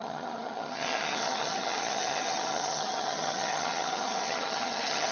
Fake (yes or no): yes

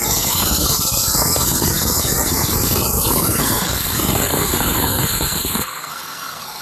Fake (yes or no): yes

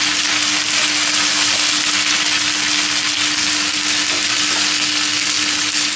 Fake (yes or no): no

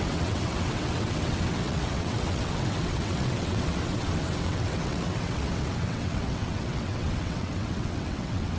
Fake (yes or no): yes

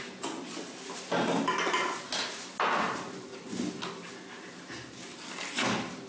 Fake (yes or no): no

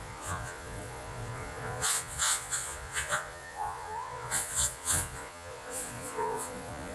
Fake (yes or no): yes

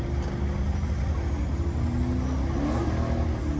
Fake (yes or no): no